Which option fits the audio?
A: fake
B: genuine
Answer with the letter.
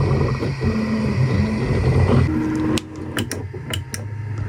B